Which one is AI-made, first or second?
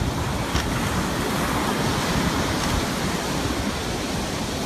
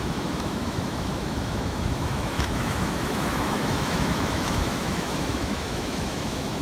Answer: second